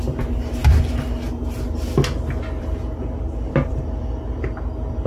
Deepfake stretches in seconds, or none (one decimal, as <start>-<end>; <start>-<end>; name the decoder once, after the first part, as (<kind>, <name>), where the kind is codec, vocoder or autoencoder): none